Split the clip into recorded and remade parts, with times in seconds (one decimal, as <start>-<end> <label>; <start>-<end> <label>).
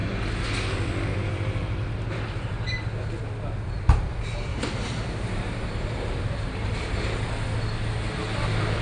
0.0-4.5 recorded; 4.5-6.9 remade; 6.9-8.8 recorded